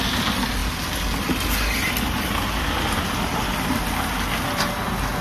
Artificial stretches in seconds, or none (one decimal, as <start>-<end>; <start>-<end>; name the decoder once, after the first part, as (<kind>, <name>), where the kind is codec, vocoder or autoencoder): none